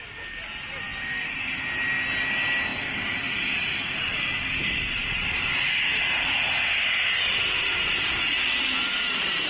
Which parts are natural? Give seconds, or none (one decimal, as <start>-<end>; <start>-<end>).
0.0-9.5